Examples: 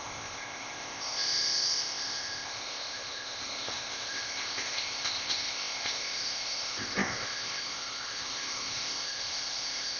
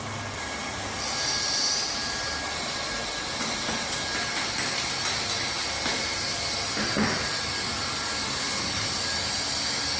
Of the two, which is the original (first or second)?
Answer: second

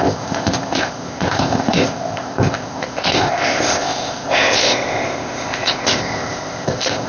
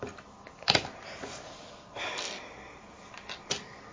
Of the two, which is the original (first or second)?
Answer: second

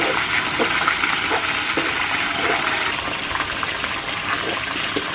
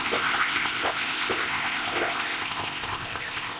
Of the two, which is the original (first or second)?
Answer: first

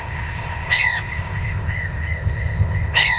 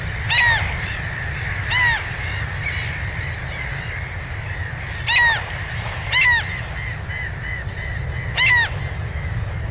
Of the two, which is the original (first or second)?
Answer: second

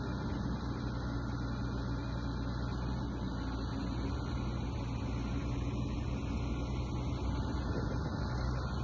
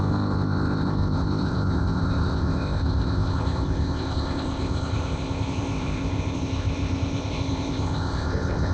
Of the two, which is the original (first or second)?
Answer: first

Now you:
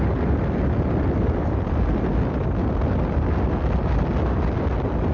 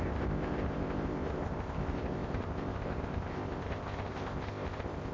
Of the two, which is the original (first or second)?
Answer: first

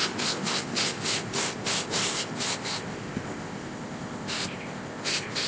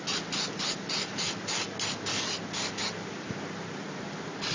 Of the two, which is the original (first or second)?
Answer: second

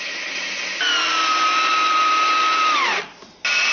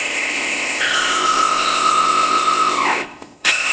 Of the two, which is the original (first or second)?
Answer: first